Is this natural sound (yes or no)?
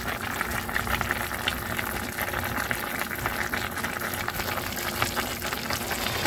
yes